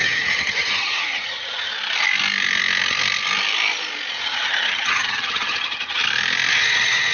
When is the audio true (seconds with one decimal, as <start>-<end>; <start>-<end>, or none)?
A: 1.7-4.1; 6.0-6.5